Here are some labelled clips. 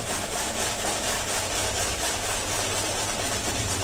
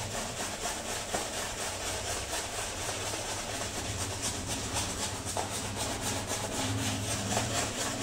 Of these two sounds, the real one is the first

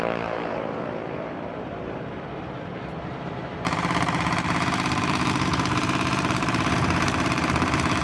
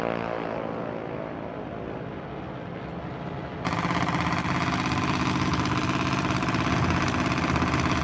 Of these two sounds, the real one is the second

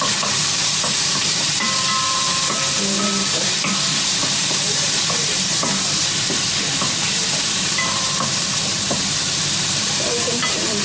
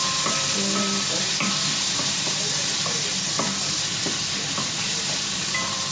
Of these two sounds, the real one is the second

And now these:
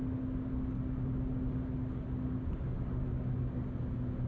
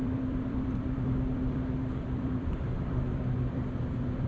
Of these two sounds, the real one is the first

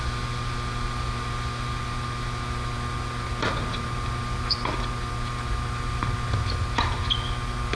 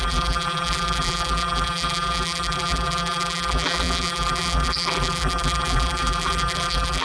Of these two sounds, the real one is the first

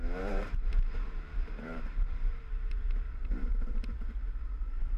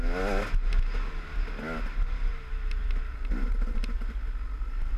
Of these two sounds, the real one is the second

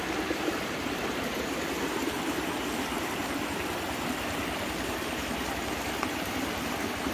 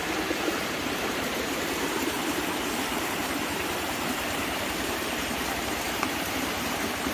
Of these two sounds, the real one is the first